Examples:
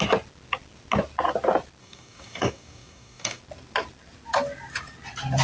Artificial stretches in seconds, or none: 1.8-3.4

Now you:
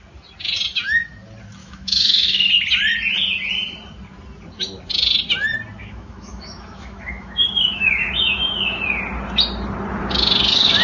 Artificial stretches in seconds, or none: 1.6-2.5; 5.8-8.8

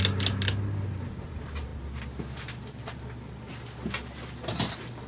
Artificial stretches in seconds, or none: none

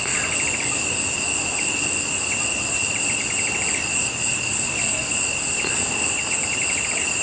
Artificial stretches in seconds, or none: none